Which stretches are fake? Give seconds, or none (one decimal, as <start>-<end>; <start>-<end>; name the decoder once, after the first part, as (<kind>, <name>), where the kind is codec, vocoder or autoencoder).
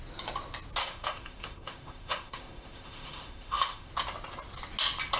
0.8-3.9 (autoencoder, DAC-VAE)